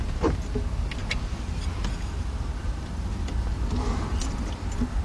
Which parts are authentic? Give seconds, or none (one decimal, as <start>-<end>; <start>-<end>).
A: 0.0-5.0